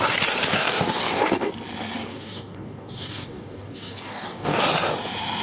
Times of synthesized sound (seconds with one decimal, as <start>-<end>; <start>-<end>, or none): 0.5-1.5; 2.1-4.6